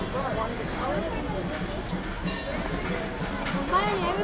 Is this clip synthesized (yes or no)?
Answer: no